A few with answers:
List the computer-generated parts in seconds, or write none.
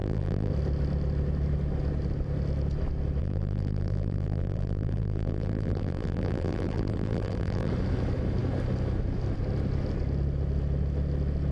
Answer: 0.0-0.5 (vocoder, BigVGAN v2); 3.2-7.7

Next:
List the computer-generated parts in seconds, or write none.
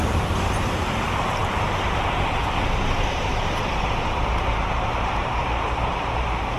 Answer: 0.0-6.6 (vocoder, BigVGAN v2)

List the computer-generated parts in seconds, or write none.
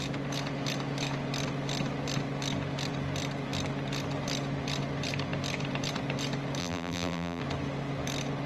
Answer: 6.6-7.4 (vocoder, BigVGAN v2)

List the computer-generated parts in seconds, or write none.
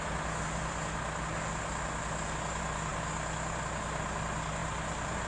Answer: 4.6-5.3 (vocoder, BigVGAN v2)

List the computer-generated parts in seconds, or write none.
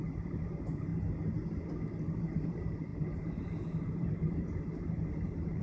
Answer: 0.0-0.9 (vocoder, BigVGAN v2); 2.0-5.6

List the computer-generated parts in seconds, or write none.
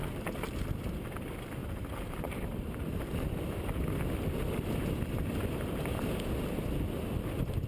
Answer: 0.0-0.6 (vocoder, BigVGAN v2); 1.6-2.7